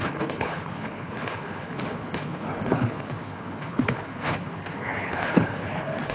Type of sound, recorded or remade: remade